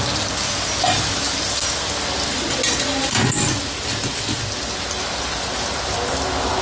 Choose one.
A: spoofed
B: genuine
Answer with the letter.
B